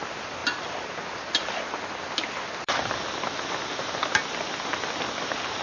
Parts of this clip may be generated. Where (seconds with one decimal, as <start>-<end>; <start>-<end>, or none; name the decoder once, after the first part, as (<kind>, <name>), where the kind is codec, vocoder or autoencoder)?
none